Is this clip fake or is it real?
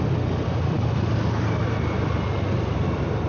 real